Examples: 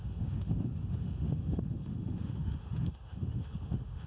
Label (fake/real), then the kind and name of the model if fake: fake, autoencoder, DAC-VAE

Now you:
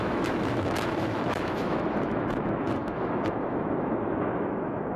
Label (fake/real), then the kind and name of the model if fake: fake, autoencoder, DAC-VAE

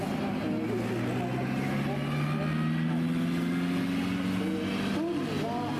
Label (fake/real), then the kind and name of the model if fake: real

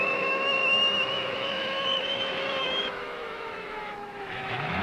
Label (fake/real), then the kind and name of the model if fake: fake, autoencoder, DAC-VAE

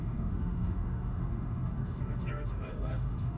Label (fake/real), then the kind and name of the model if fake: fake, autoencoder, DAC-VAE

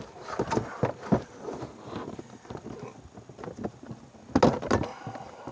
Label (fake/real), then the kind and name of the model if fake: real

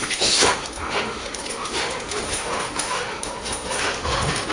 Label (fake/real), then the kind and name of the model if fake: fake, autoencoder, DAC-VAE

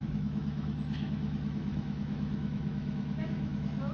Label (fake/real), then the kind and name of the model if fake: fake, autoencoder, DAC-VAE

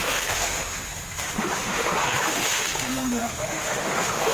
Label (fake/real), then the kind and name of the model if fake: fake, autoencoder, DAC-VAE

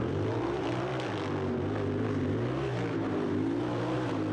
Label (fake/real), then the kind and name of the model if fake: real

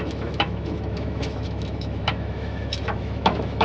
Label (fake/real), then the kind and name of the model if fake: fake, autoencoder, DAC-VAE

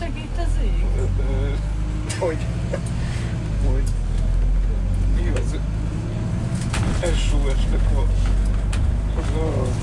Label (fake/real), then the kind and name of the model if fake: real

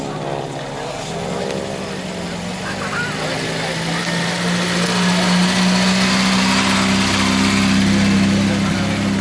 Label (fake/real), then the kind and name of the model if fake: real